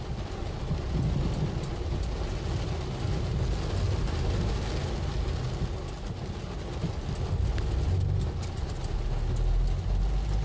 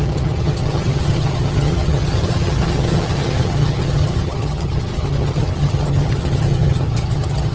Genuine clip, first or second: first